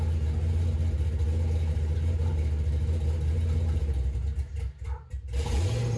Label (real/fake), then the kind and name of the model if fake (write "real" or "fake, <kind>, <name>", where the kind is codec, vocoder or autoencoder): real